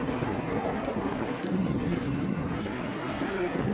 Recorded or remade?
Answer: remade